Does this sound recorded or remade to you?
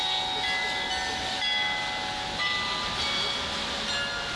recorded